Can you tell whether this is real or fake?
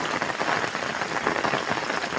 real